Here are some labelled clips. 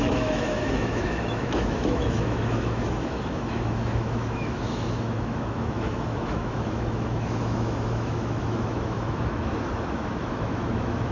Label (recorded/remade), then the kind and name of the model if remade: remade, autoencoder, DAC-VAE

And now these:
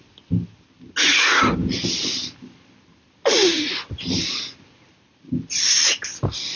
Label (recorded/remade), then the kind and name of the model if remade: recorded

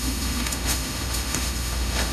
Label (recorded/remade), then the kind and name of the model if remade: remade, autoencoder, DAC-VAE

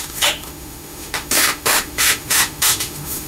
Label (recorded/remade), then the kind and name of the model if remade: remade, autoencoder, DAC-VAE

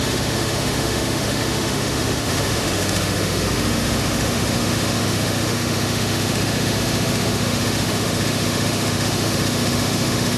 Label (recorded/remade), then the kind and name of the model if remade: remade, autoencoder, DAC-VAE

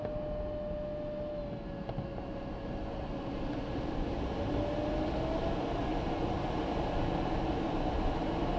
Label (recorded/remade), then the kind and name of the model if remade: recorded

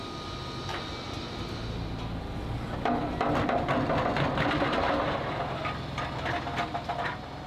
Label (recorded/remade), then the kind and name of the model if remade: recorded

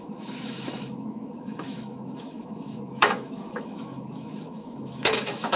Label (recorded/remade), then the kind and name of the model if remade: remade, autoencoder, DAC-VAE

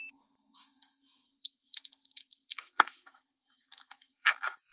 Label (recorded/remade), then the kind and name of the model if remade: remade, autoencoder, DAC-VAE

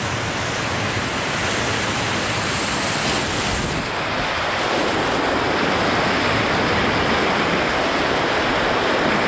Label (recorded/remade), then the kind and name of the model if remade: recorded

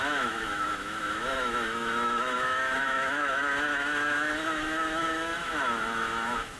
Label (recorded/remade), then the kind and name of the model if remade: remade, autoencoder, DAC-VAE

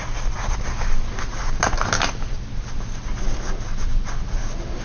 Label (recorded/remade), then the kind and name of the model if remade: recorded